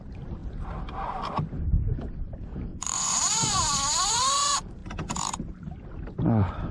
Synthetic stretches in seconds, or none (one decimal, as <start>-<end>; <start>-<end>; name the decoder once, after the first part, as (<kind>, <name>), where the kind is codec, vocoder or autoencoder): 2.7-3.6 (vocoder, Vocos)